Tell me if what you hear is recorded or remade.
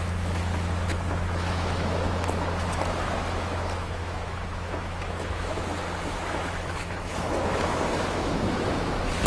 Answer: remade